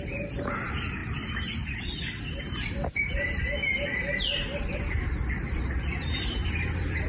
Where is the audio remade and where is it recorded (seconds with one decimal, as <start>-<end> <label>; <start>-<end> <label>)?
0.0-3.6 remade; 3.6-4.6 recorded; 4.6-7.1 remade